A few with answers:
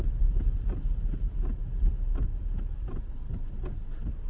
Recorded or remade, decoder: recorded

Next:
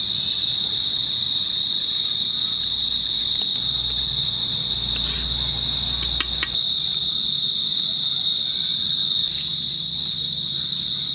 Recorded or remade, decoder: recorded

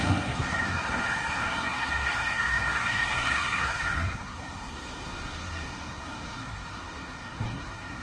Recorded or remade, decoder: remade, codec, SNAC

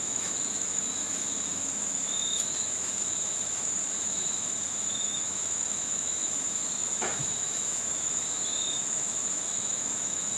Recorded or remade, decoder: remade, autoencoder, DAC-VAE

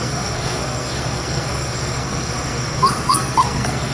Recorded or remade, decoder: remade, codec, SNAC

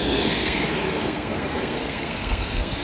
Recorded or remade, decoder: remade, codec, SNAC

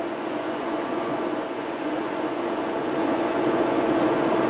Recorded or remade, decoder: remade, vocoder, Vocos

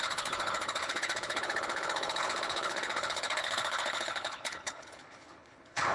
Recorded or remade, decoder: remade, codec, HILCodec